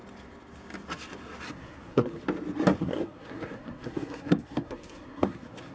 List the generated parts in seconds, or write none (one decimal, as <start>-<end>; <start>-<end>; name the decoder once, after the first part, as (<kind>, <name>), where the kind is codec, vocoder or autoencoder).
1.5-2.2 (codec, SNAC); 2.8-5.7